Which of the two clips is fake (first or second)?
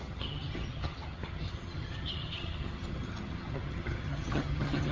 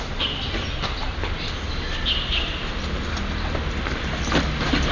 first